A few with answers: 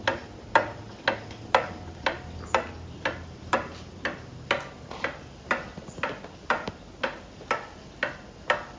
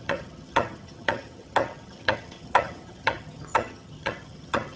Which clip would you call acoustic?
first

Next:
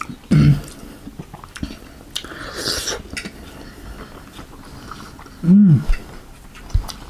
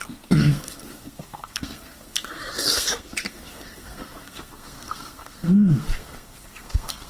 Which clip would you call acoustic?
first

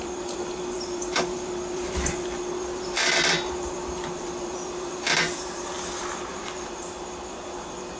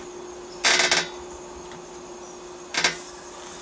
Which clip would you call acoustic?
second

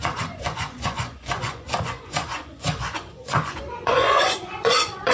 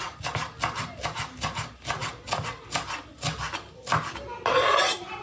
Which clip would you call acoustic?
second